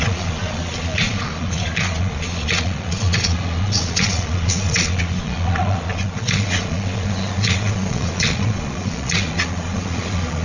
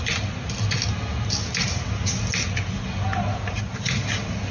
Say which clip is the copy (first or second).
first